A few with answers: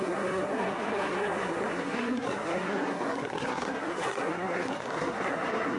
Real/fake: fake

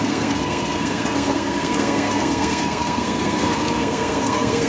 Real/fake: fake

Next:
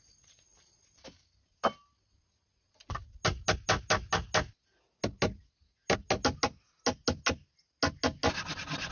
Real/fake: real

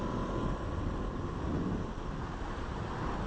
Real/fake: real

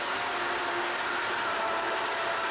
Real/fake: real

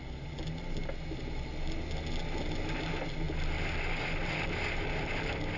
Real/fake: real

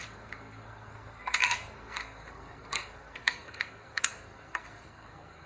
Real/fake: fake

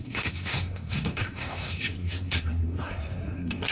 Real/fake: fake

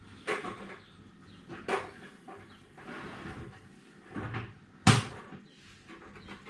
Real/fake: real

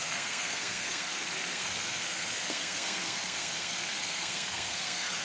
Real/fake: fake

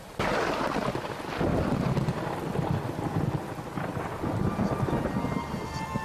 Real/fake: real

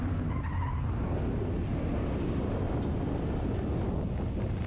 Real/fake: real